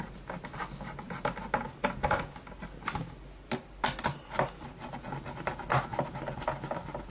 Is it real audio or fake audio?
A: real